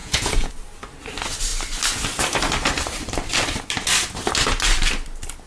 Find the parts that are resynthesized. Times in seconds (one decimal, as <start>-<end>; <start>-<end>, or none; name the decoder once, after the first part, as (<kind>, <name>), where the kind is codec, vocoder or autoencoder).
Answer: 0.0-0.5 (vocoder, Vocos)